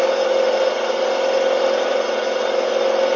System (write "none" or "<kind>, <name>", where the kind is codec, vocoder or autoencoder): none